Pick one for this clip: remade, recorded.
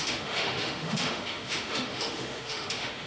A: remade